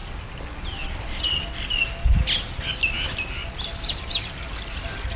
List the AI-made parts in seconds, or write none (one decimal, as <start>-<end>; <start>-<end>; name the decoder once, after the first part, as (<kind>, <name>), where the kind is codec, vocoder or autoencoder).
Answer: 3.4-4.3 (vocoder, BigVGAN v2)